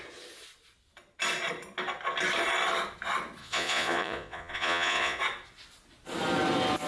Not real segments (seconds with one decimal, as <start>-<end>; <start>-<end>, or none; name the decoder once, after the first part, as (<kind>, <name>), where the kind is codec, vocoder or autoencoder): 3.4-5.2 (vocoder, Vocos)